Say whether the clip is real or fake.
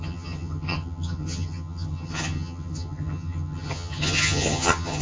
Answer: fake